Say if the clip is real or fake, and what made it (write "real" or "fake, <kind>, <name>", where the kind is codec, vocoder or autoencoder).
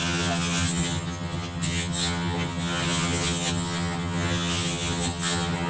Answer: fake, vocoder, HiFi-GAN